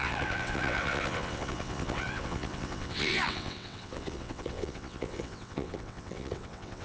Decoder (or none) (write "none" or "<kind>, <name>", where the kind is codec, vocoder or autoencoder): vocoder, WaveNeXt